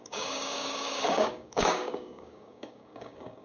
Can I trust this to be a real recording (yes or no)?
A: no